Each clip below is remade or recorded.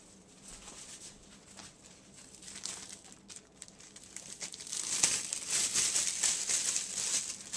recorded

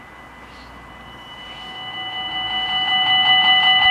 recorded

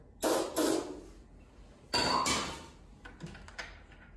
recorded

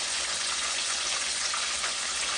remade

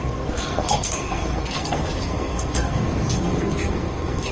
remade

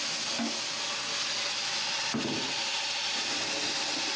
recorded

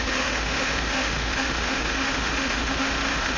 remade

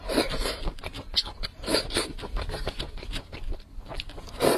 recorded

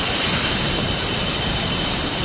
recorded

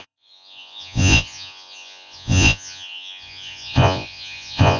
remade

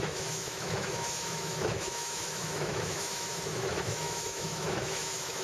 remade